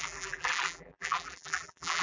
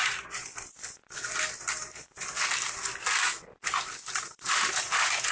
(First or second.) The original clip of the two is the second